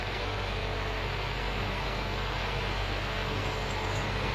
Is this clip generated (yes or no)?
yes